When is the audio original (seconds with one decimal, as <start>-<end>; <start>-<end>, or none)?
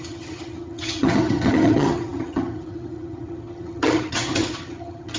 none